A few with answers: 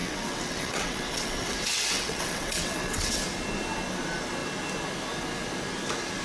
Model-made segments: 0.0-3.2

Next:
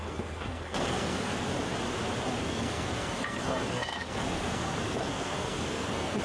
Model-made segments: 0.0-1.5; 2.4-6.2

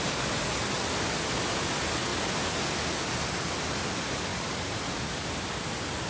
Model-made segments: 0.6-1.1; 4.3-6.1

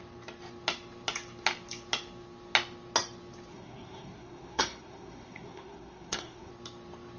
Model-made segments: 3.5-6.5

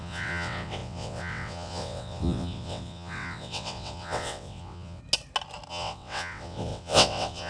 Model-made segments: 0.0-5.0; 5.7-7.5

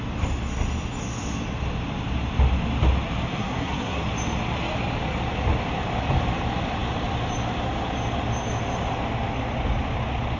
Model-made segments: 3.3-4.0